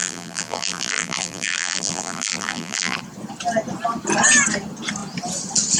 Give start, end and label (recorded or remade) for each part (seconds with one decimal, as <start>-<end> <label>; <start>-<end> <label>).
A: 0.0-3.0 remade; 3.0-5.8 recorded